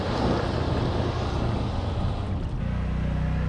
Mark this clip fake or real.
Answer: real